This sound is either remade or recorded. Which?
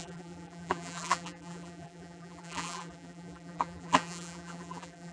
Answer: remade